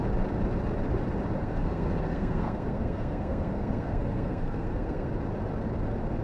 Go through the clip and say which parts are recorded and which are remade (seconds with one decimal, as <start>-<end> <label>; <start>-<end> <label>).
0.0-1.4 recorded; 1.4-5.1 remade; 5.1-6.2 recorded